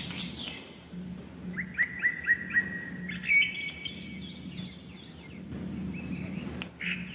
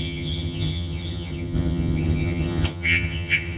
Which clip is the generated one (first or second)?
second